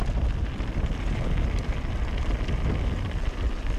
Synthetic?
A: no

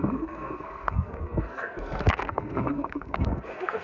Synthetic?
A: yes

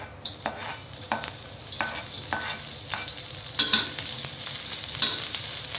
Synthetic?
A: no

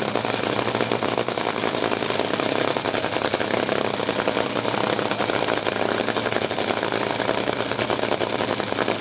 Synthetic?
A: no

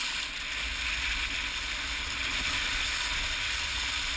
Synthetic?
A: no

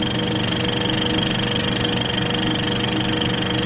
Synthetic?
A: no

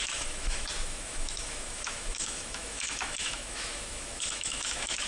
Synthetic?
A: yes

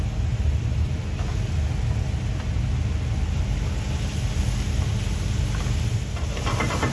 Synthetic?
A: no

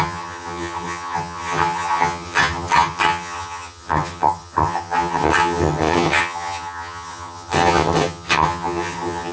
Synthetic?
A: yes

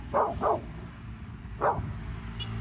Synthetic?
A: no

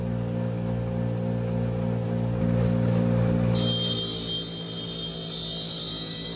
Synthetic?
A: no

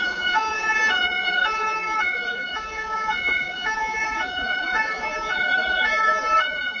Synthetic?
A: yes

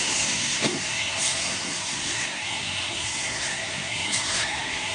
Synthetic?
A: yes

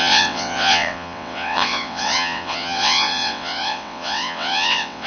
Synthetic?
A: yes